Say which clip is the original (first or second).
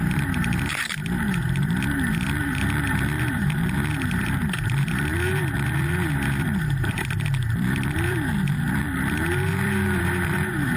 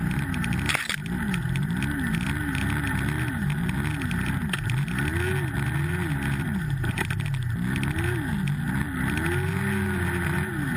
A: second